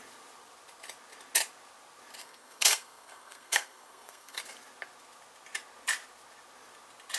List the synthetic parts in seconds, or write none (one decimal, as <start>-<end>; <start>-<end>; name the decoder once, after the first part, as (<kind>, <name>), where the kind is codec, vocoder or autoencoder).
2.2-4.4 (codec, SNAC)